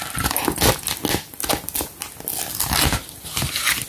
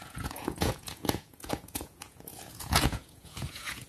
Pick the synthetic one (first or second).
second